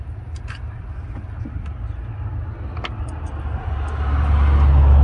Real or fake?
real